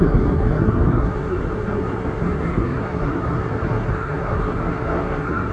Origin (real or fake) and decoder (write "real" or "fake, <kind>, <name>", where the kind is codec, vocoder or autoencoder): fake, codec, SNAC